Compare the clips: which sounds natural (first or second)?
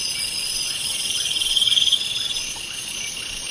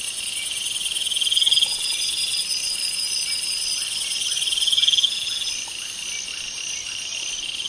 second